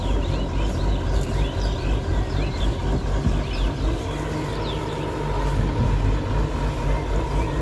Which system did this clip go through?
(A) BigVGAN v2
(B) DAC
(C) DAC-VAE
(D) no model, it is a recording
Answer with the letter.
D